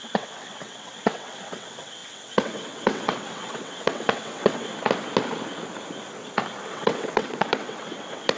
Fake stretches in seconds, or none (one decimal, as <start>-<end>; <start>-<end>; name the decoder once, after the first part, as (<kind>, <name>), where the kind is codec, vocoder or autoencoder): 0.0-4.7 (vocoder, WaveNeXt); 6.6-8.4